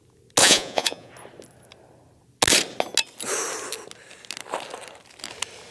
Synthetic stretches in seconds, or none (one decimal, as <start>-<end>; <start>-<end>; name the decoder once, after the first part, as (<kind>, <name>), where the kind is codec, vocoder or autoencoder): 0.4-1.1 (vocoder, Vocos)